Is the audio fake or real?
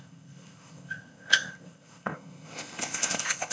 fake